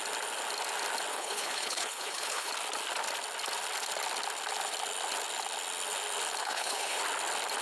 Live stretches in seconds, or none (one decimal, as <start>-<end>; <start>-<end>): 0.0-1.1; 2.5-6.4; 7.0-7.6